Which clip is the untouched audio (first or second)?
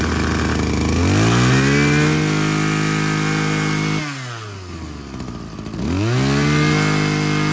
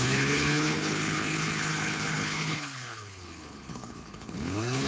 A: first